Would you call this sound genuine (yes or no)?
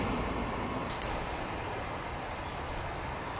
yes